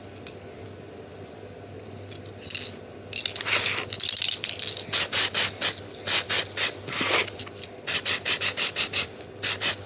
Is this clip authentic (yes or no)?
yes